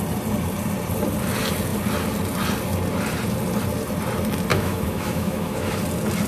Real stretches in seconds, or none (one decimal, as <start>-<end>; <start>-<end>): 0.0-4.5; 5.8-6.3